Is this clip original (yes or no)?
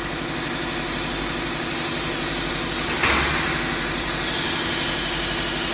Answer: yes